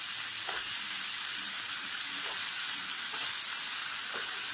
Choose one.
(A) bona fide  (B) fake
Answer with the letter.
A